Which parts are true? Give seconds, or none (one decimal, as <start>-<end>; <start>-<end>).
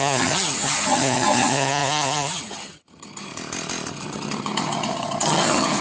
3.3-3.9